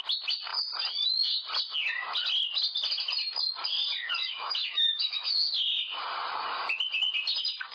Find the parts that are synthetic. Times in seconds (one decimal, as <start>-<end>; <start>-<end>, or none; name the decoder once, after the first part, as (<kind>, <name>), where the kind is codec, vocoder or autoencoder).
4.2-5.4 (autoencoder, DAC-VAE)